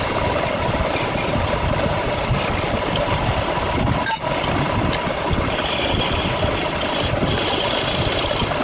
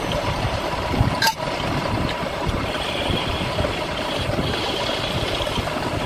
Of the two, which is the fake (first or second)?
second